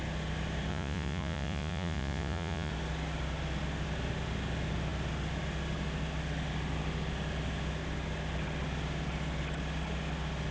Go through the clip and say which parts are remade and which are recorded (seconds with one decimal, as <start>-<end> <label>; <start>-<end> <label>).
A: 0.0-0.7 recorded; 0.7-2.7 remade; 2.7-10.5 recorded